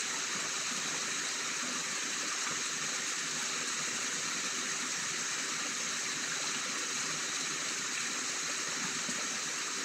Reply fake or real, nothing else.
real